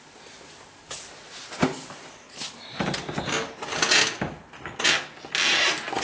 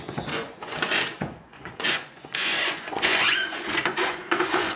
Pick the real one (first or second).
first